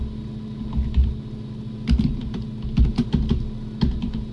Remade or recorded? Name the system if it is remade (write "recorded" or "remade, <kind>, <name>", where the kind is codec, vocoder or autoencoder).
recorded